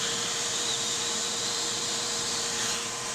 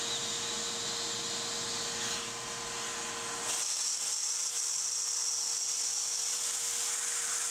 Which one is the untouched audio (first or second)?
second